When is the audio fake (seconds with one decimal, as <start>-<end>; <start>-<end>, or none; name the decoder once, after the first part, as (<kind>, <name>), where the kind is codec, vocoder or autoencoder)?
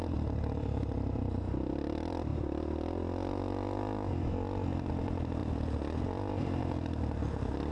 0.0-2.3 (vocoder, BigVGAN v2); 4.9-7.7